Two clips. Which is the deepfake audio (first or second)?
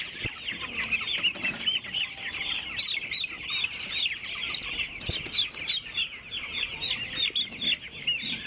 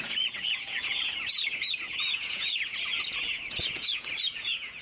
second